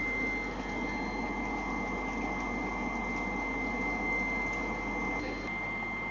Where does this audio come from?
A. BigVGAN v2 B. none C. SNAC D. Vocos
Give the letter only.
B